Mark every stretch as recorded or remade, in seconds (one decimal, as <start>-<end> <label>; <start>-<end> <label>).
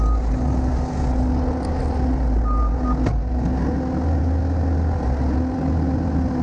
0.0-6.4 recorded